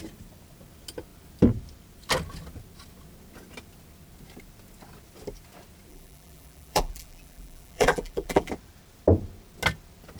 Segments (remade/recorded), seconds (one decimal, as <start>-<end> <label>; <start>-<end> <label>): 0.0-5.9 recorded; 5.9-8.5 remade; 8.5-10.2 recorded